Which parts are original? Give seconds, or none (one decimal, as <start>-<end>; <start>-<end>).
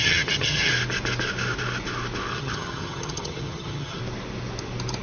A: 0.7-2.3; 4.0-5.0